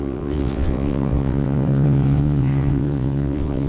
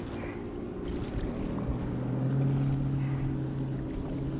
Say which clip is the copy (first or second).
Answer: first